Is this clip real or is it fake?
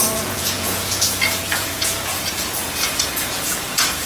fake